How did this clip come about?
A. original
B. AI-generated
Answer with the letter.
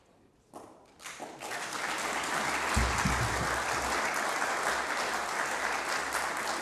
A